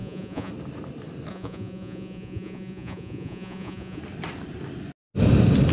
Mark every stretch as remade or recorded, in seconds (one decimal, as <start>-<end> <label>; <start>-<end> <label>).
0.0-0.5 remade; 0.5-1.3 recorded; 1.3-4.0 remade; 4.0-5.7 recorded